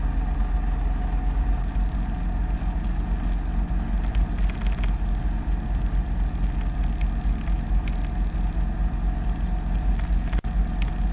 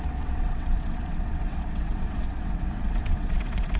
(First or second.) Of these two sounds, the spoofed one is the second